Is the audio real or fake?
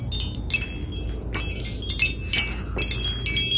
real